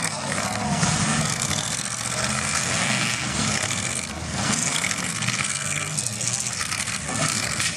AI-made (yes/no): yes